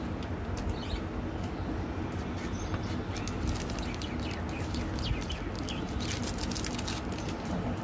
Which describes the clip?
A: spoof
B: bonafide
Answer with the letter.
B